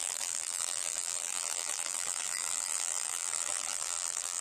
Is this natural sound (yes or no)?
no